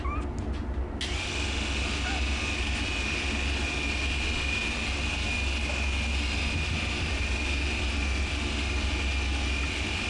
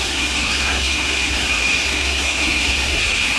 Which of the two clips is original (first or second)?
first